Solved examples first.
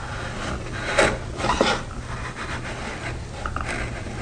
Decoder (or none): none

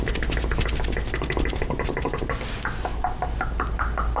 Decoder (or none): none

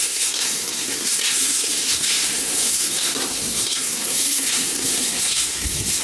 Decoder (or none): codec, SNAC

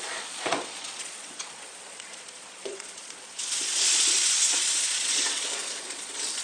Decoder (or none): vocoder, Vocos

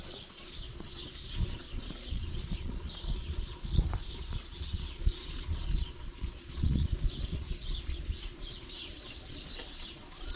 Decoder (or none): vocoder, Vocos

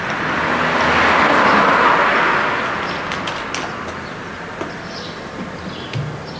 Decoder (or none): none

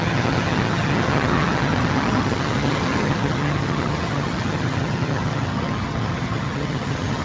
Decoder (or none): vocoder, HiFi-GAN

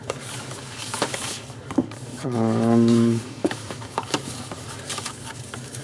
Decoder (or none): codec, DAC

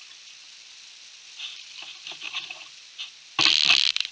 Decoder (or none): none